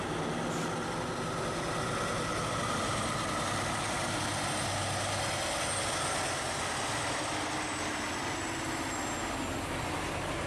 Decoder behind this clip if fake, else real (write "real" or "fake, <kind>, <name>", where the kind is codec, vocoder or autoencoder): real